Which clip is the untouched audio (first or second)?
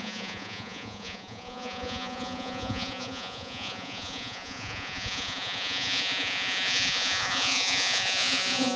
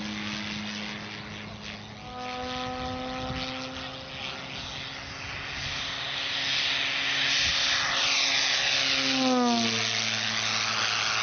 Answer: second